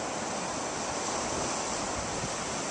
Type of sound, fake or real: real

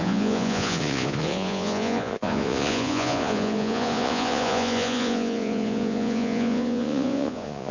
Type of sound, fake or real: fake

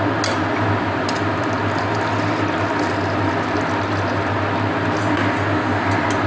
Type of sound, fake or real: real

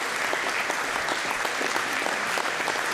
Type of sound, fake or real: real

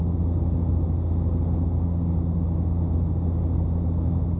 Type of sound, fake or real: real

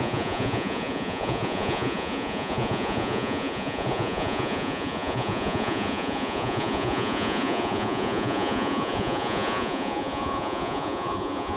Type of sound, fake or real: fake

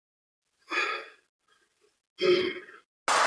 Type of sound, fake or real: real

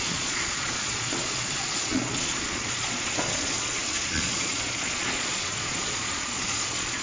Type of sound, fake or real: fake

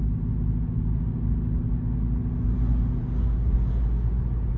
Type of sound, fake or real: real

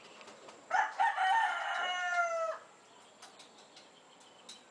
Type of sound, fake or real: real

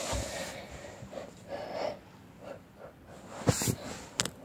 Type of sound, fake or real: real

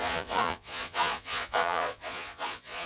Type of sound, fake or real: fake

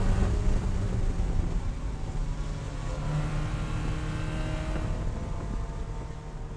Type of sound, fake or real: real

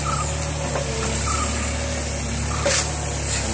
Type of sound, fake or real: real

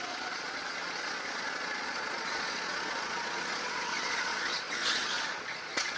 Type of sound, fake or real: fake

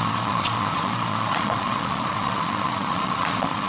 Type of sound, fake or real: fake